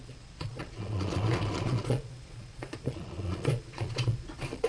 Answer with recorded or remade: remade